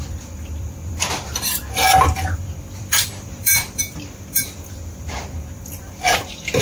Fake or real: fake